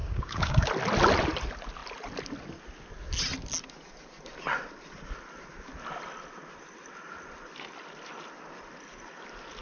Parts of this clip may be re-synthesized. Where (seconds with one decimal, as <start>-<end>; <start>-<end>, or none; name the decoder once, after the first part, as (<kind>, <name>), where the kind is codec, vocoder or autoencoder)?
0.0-0.7 (codec, DAC)